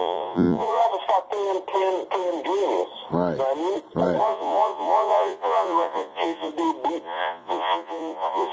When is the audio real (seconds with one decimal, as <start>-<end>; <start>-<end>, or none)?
0.8-4.2; 6.5-7.0

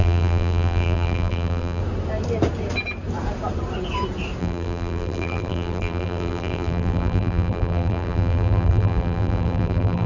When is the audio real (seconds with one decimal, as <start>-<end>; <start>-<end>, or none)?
1.8-4.4

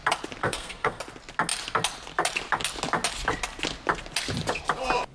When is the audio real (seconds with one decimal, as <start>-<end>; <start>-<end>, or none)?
0.0-0.4; 1.0-5.1

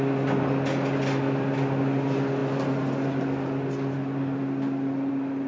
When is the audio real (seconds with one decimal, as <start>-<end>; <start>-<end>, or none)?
0.0-5.5